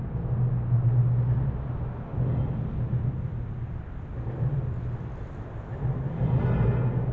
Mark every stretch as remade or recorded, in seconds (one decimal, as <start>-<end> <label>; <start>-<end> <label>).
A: 0.0-2.1 recorded; 2.1-6.4 remade; 6.4-7.1 recorded

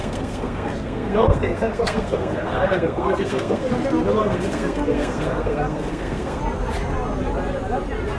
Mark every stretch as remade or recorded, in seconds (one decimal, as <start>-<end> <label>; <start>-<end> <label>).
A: 0.0-3.7 remade; 3.7-4.2 recorded; 4.2-6.4 remade; 6.4-8.2 recorded

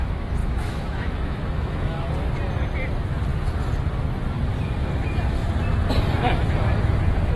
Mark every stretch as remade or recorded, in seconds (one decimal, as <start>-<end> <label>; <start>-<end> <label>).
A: 0.0-0.4 recorded; 0.4-2.1 remade; 2.1-7.4 recorded